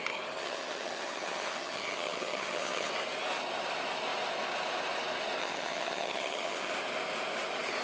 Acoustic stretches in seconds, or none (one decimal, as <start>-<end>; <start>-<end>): 0.0-0.4; 2.9-5.4; 6.7-7.8